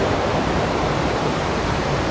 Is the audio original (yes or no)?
no